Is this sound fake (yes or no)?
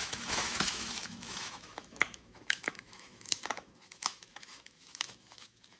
yes